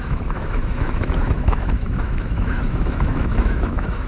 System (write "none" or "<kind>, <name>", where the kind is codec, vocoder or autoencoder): autoencoder, DAC-VAE